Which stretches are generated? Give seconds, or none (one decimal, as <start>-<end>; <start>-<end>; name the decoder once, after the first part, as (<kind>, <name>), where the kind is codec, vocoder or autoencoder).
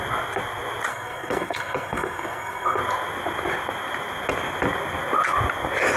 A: 0.9-2.8 (codec, SNAC)